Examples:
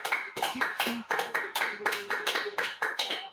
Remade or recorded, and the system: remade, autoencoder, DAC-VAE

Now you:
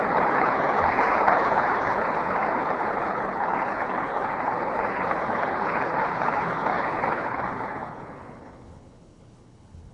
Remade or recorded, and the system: remade, codec, HILCodec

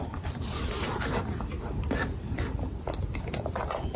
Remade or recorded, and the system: remade, vocoder, BigVGAN v2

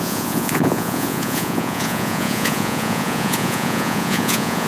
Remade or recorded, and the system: remade, vocoder, Vocos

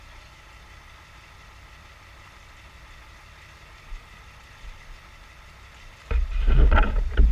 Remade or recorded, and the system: remade, vocoder, BigVGAN v2